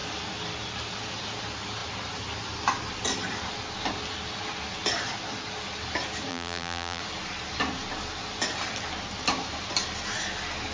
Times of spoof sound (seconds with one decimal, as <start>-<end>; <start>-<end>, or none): 6.3-7.0